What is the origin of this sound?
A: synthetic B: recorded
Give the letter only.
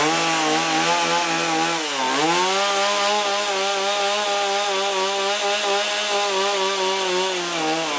B